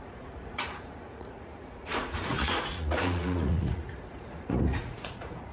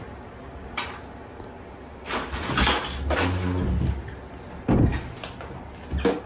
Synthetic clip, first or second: first